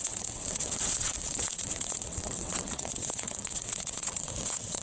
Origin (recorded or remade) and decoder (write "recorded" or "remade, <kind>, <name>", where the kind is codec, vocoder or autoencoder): remade, vocoder, WaveNeXt